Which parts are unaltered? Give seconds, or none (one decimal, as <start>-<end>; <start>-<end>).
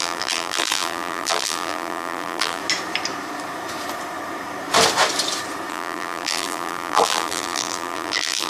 2.6-5.7